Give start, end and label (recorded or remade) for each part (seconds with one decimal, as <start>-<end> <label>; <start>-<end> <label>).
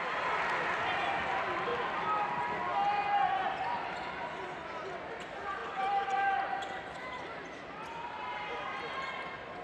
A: 0.0-5.6 recorded; 5.6-9.1 remade; 9.1-9.6 recorded